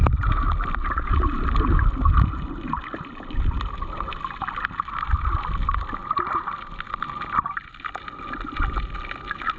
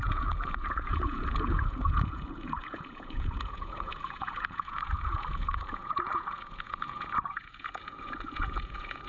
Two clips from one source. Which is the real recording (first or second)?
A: first